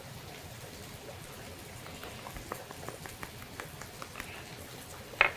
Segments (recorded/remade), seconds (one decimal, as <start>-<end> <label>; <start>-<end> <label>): 0.0-5.4 recorded